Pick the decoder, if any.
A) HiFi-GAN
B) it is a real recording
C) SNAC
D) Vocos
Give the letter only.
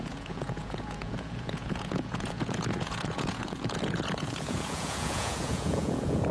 D